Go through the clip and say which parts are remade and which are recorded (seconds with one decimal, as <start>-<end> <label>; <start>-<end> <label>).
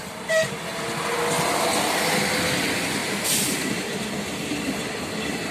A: 0.0-3.0 recorded; 3.0-4.0 remade; 4.0-5.5 recorded